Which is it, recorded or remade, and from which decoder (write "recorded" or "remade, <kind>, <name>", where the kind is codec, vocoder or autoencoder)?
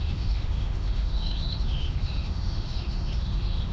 remade, autoencoder, DAC-VAE